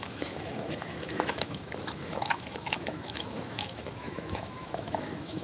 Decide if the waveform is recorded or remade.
remade